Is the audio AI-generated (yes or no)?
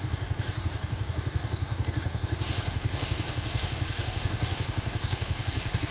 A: yes